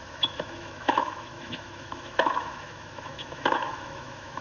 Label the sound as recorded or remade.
remade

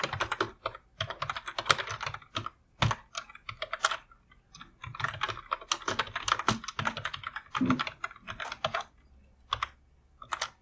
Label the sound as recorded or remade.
recorded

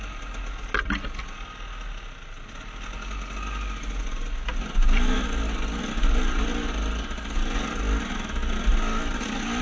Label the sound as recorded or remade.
recorded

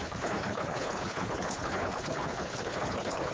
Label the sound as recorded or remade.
remade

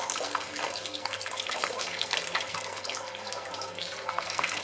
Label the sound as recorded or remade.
remade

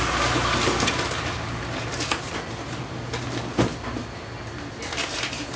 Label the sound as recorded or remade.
recorded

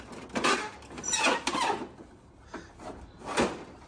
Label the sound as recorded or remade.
recorded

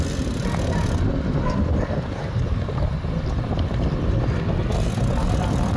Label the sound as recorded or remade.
recorded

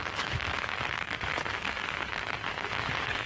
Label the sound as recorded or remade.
remade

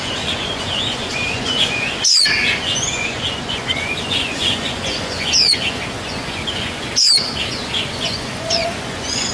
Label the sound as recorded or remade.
remade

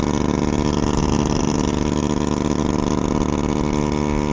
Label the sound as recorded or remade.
recorded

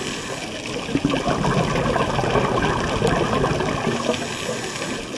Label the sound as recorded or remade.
recorded